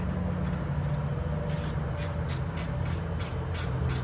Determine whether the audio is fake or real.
real